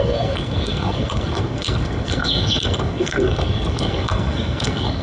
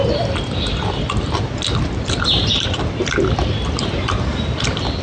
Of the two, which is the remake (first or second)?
first